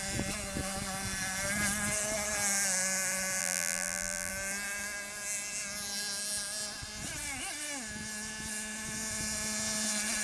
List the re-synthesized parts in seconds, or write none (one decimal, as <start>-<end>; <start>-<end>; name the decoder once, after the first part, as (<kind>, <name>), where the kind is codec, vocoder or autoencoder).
3.4-4.3 (vocoder, BigVGAN v2)